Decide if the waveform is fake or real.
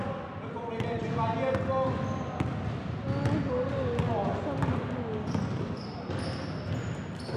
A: real